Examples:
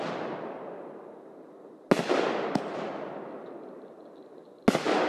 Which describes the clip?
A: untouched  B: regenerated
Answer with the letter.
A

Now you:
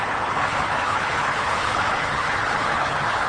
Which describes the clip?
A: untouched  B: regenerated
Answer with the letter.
B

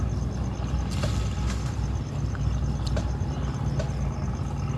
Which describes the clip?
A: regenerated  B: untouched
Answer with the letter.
B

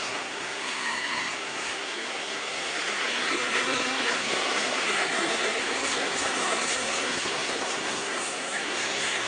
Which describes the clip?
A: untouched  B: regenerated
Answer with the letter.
B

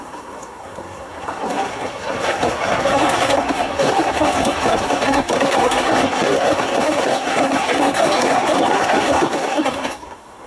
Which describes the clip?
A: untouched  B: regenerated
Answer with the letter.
B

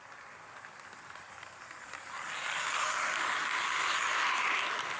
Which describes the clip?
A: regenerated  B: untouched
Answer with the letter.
B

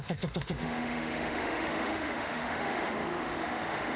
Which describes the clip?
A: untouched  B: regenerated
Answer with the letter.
B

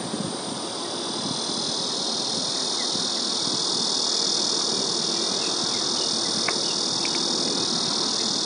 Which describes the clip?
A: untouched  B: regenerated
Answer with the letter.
A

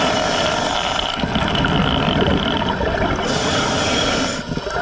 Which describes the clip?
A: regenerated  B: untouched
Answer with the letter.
B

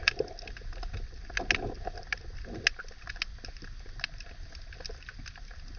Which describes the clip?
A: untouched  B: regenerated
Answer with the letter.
A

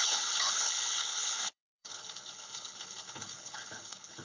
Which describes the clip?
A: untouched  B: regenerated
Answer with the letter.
B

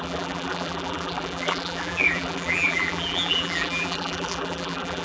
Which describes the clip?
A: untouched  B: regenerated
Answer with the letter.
B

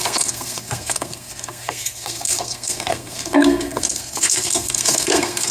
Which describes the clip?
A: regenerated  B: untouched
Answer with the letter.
A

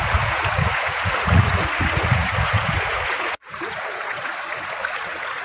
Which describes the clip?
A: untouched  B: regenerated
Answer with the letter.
B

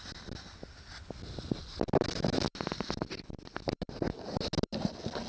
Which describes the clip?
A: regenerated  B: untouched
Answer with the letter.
B